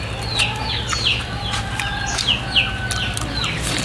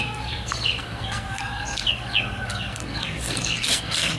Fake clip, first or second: second